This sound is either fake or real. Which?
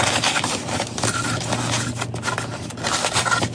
real